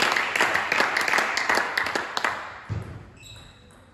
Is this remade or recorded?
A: recorded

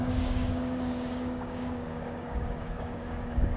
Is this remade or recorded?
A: remade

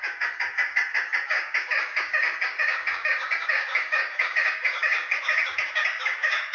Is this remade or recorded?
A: remade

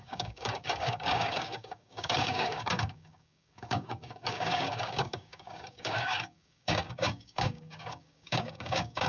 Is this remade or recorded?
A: remade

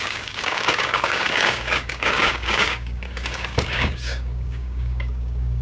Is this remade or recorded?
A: remade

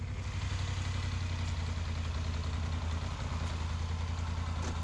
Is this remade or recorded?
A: recorded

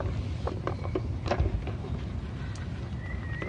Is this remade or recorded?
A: recorded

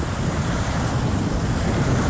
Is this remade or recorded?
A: recorded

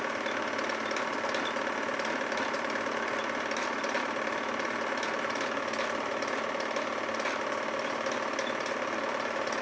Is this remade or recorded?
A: recorded